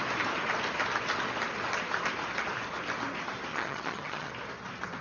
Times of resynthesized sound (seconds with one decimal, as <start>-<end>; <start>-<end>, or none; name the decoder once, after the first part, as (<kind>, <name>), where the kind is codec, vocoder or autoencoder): 3.5-4.3 (vocoder, HiFi-GAN)